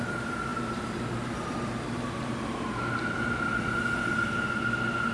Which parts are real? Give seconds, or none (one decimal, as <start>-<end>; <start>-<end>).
0.0-0.5; 2.6-5.1

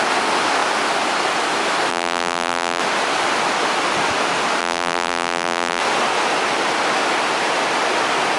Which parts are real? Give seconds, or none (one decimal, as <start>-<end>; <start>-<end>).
0.0-1.9; 2.8-4.6; 5.8-8.4